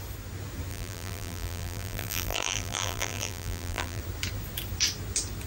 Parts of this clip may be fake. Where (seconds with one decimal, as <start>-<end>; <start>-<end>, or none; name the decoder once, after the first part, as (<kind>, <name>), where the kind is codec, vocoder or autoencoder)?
0.7-4.0 (vocoder, BigVGAN v2)